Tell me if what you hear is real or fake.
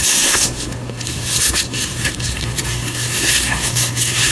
fake